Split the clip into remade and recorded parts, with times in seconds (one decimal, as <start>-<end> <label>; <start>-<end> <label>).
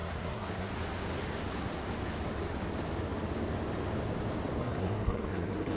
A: 0.0-0.7 remade; 0.7-4.6 recorded; 4.6-5.8 remade